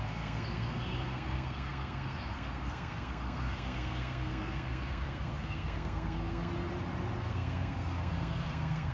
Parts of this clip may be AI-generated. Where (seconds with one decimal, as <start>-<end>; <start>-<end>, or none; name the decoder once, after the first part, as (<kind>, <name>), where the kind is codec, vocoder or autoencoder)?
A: 0.0-6.5 (codec, SNAC); 7.2-8.9